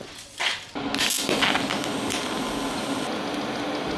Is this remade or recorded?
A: recorded